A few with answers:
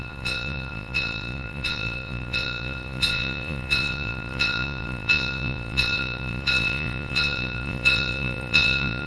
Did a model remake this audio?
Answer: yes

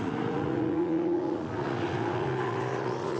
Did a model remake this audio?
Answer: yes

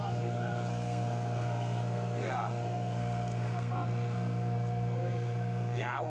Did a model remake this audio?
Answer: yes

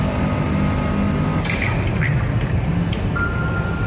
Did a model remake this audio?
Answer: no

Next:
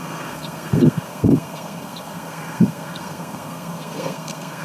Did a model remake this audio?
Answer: yes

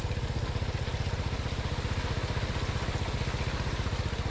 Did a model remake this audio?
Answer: no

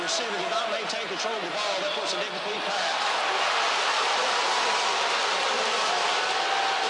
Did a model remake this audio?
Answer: no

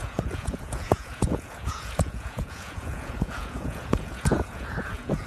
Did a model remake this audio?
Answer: yes